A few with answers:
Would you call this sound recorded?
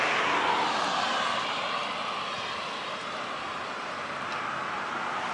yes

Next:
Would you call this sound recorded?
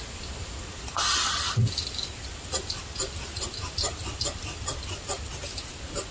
yes